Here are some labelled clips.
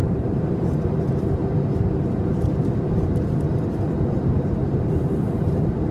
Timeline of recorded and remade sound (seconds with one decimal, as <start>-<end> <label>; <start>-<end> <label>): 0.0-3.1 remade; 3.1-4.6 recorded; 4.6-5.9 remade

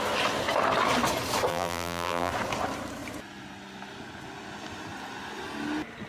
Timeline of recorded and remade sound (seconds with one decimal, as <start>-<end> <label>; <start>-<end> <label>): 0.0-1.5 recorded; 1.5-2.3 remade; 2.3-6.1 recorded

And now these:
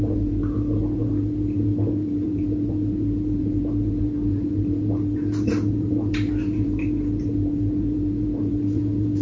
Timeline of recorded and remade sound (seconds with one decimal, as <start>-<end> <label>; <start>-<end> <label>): 0.0-9.2 remade

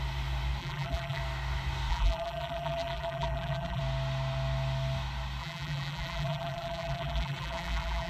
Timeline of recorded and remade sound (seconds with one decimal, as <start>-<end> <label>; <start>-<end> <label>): 0.0-0.6 recorded; 0.6-1.2 remade; 1.2-1.9 recorded; 1.9-3.8 remade; 3.8-5.4 recorded; 5.4-8.1 remade

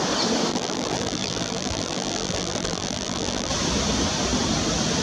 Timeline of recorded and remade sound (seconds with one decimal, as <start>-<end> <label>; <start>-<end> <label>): 0.0-0.5 recorded; 0.5-3.5 remade; 3.5-5.0 recorded

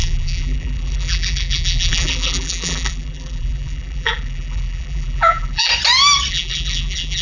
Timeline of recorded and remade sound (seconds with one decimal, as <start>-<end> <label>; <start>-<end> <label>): 0.0-5.7 remade; 5.7-6.3 recorded; 6.3-7.2 remade

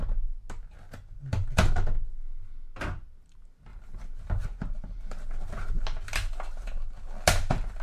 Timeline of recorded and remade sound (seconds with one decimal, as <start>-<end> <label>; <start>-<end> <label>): 0.0-7.8 recorded